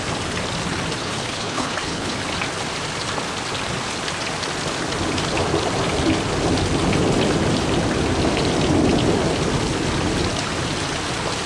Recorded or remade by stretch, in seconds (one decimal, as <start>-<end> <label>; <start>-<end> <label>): 0.0-1.0 recorded; 1.0-2.2 remade; 2.2-11.5 recorded